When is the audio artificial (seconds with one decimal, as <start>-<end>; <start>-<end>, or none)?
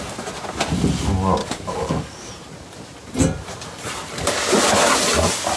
1.4-2.3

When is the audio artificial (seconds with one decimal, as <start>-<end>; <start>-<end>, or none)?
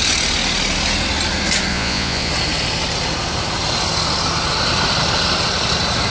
1.7-2.3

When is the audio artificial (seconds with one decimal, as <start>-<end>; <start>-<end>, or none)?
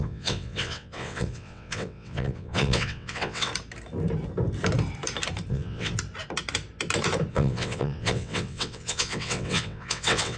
0.0-3.5; 5.5-5.9; 7.3-10.4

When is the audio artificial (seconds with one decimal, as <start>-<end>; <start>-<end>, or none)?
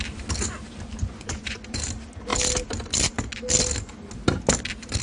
1.0-1.6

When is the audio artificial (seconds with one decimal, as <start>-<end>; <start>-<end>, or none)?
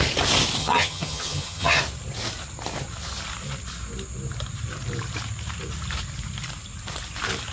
0.6-1.8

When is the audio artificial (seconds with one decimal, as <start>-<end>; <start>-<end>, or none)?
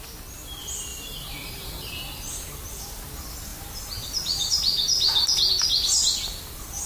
0.9-1.9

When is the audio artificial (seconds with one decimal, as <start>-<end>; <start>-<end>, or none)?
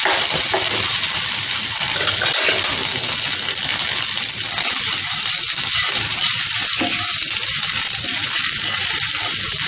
none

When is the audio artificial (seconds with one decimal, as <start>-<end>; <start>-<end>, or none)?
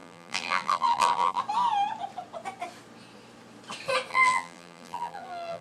0.0-1.4; 4.1-5.6